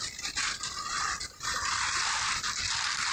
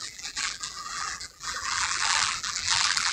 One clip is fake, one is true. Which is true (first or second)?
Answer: first